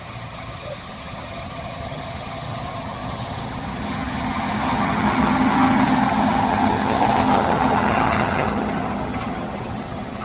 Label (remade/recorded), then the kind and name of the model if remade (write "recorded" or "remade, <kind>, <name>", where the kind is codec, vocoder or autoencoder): remade, vocoder, HiFi-GAN